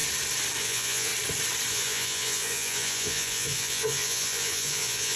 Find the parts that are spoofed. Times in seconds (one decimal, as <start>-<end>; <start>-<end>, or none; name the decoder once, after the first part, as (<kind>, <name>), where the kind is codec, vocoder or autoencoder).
0.6-1.1 (vocoder, Vocos); 1.7-5.2